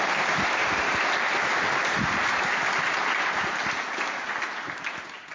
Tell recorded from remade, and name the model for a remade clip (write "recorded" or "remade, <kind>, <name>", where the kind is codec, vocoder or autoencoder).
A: recorded